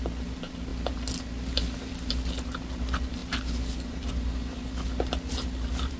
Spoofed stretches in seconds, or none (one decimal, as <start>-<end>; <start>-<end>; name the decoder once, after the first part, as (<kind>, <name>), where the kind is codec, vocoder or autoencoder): none